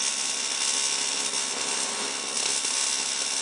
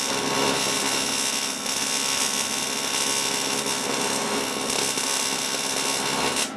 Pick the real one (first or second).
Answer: second